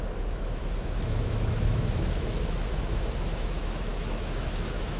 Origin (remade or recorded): remade